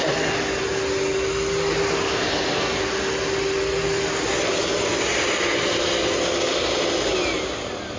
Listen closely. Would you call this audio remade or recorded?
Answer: recorded